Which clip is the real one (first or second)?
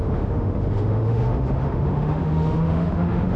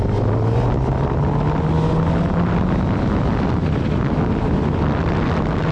second